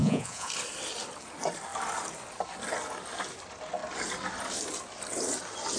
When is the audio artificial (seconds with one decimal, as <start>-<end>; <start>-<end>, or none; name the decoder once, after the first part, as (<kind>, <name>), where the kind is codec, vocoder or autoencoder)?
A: 0.0-0.5 (vocoder, Vocos)